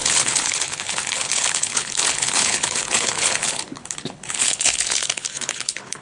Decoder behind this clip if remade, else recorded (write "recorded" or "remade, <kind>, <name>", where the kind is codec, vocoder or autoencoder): remade, codec, HILCodec